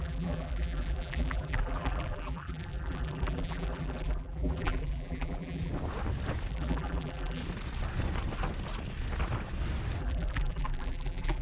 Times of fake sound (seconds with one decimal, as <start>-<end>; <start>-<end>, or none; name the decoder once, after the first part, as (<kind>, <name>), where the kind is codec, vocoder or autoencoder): 0.0-5.7 (vocoder, BigVGAN v2); 6.5-7.4; 10.0-11.4